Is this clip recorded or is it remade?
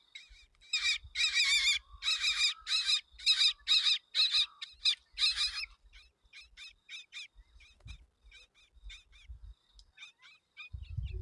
recorded